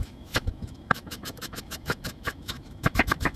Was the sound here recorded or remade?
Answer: remade